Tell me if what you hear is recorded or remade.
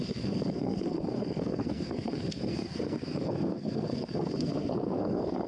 remade